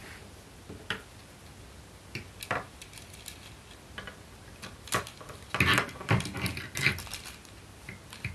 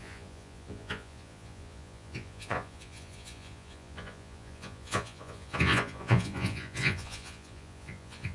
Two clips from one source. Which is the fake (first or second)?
second